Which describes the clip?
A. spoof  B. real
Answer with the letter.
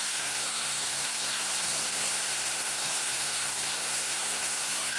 A